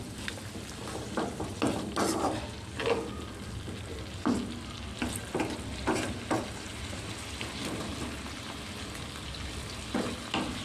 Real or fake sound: real